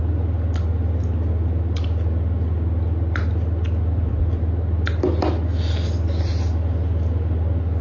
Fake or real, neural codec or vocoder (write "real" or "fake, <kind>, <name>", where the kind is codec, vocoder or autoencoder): real